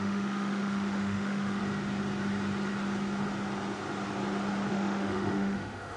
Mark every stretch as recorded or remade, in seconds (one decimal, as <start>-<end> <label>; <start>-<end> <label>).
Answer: 0.0-1.6 remade; 1.6-4.7 recorded; 4.7-6.0 remade